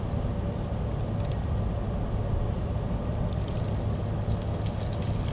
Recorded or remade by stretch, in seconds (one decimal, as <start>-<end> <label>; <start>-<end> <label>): 0.0-5.3 recorded